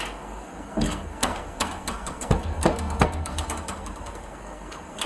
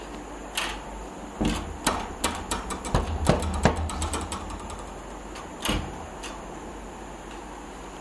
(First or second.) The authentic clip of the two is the second